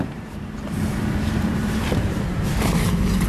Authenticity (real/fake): fake